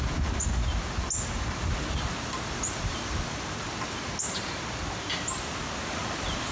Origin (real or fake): real